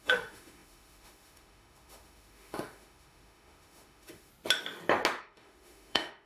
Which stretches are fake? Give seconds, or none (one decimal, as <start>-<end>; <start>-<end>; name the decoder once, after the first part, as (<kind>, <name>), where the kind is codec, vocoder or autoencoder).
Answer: 0.0-4.3 (autoencoder, DAC-VAE); 5.2-6.3